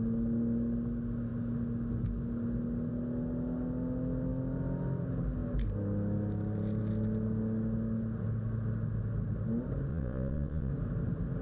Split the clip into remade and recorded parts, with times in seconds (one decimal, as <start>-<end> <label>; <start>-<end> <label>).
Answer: 0.0-9.9 recorded; 9.9-10.7 remade; 10.7-11.4 recorded